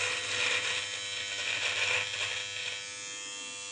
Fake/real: real